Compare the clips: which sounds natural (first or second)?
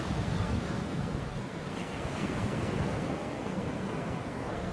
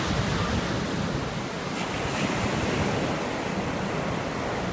second